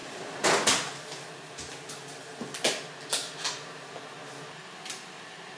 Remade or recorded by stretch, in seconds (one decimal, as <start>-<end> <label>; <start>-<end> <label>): 0.0-5.6 recorded